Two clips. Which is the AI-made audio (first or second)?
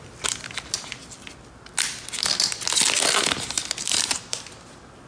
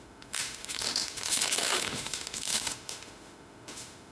second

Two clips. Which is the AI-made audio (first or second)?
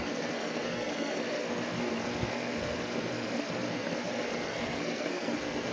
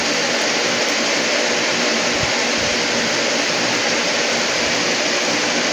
first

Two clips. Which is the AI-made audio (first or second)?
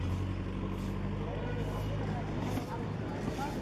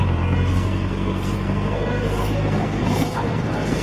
second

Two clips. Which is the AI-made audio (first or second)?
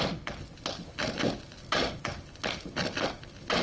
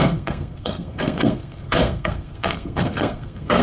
second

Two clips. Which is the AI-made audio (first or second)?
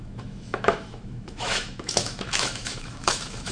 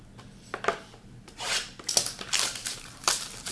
first